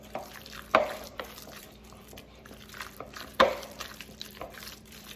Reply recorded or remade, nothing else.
remade